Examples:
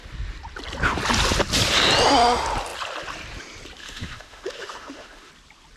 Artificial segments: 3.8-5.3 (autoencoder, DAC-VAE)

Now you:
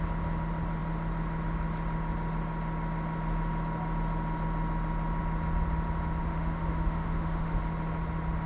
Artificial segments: 6.2-7.6 (autoencoder, DAC-VAE)

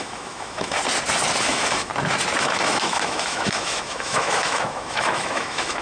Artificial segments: 0.0-0.8 (autoencoder, DAC-VAE); 1.4-1.9; 2.4-5.8